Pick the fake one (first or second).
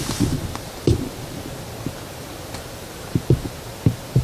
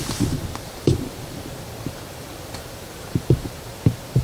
second